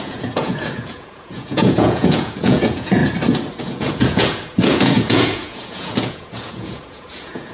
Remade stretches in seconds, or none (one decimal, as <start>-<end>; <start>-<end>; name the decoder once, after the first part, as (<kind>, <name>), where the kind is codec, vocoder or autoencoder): 0.0-3.0 (vocoder, Vocos); 3.6-7.5